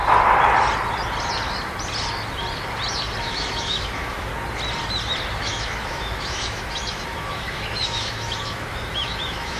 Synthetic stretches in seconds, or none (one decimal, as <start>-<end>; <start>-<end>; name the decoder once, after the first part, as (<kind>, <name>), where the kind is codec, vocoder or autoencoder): 3.2-4.3 (autoencoder, DAC-VAE); 5.4-9.6